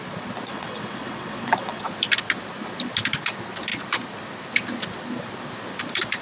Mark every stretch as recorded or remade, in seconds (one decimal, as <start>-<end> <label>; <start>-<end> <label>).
0.0-0.5 recorded; 0.5-1.8 remade; 1.8-6.2 recorded